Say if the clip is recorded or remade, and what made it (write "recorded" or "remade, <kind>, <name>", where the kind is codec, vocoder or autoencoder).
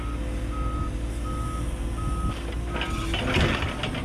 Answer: recorded